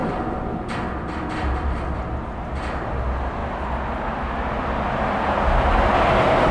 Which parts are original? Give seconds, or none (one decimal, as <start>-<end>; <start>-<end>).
0.0-6.5